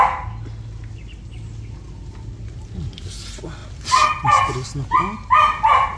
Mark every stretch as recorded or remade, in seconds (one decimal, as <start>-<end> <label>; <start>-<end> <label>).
0.0-6.0 recorded